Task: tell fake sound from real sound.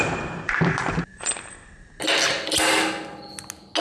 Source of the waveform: real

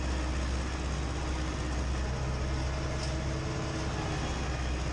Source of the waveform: real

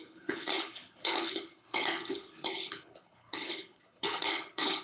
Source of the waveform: fake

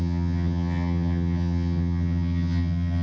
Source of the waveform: fake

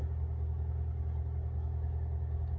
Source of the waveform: real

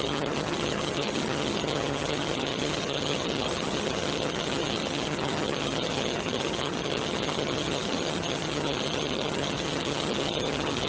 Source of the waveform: fake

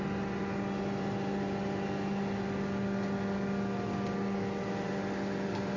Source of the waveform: real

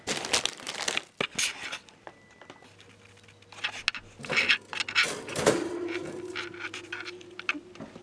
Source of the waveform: real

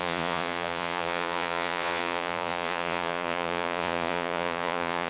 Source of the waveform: fake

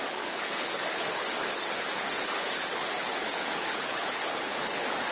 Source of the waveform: fake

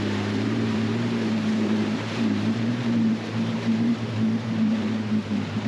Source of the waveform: fake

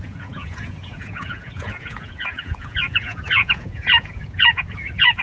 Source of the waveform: fake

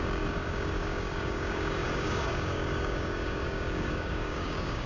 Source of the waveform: fake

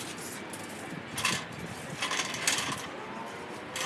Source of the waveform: real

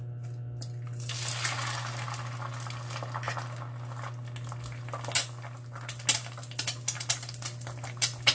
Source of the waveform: real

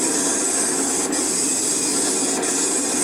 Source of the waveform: real